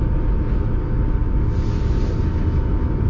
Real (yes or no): yes